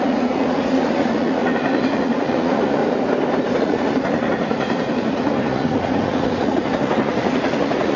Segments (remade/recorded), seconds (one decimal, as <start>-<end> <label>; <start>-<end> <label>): 0.0-2.8 remade; 2.8-3.6 recorded; 3.6-8.0 remade